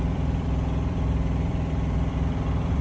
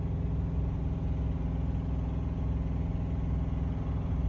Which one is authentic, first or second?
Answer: second